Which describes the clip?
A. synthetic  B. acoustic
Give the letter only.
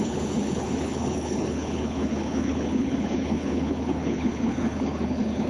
A